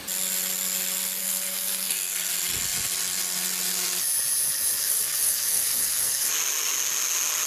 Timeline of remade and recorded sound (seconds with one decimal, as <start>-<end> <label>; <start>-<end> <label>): 0.0-1.2 recorded; 1.2-2.3 remade; 2.3-4.8 recorded; 4.8-6.3 remade; 6.3-7.5 recorded